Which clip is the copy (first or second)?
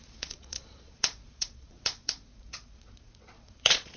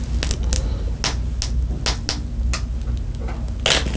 first